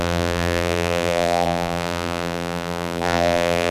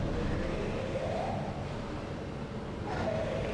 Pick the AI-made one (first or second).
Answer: first